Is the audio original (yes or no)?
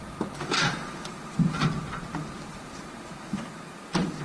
no